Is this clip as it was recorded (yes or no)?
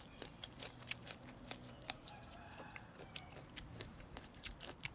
no